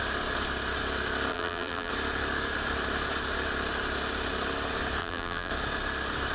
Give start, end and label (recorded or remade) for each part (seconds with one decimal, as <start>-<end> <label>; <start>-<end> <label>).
0.0-1.3 recorded; 1.3-1.9 remade; 1.9-5.0 recorded; 5.0-5.5 remade; 5.5-6.3 recorded